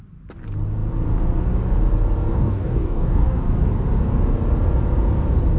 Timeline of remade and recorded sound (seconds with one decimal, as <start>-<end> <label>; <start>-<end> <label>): 0.0-2.3 recorded; 2.3-3.4 remade; 3.4-5.6 recorded

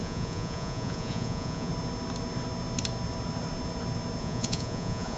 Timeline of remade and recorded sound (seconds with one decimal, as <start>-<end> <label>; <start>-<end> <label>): 0.0-1.7 remade; 1.7-4.2 recorded; 4.2-5.2 remade

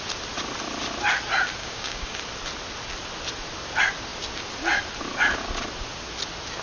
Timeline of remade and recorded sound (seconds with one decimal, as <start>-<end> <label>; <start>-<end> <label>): 0.0-1.6 recorded; 1.6-2.2 remade; 2.2-6.6 recorded